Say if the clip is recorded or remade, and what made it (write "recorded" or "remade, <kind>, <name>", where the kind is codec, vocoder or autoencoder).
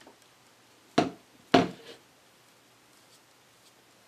recorded